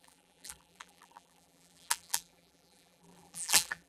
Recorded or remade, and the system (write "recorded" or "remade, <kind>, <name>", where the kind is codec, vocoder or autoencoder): remade, vocoder, BigVGAN v2